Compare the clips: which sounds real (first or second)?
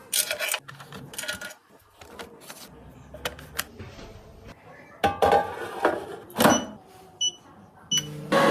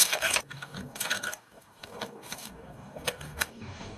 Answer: first